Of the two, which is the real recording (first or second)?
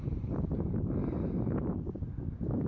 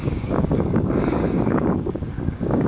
first